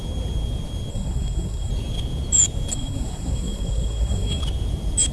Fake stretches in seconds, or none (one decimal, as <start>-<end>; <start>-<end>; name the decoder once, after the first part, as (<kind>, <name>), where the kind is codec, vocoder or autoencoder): 0.9-1.7 (codec, SNAC); 2.7-4.4